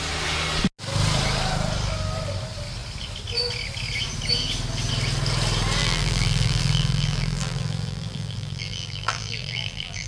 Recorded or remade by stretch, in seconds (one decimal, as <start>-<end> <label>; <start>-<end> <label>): 0.0-5.8 recorded; 5.8-10.1 remade